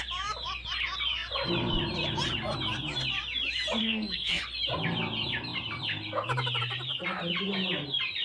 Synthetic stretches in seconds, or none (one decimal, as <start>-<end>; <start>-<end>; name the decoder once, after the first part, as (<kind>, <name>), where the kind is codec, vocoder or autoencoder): 3.8-4.4 (codec, SNAC)